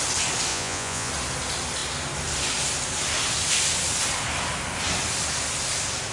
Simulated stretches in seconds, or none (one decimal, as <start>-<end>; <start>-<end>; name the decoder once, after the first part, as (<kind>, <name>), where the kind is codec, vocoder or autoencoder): 0.5-1.1 (vocoder, Vocos)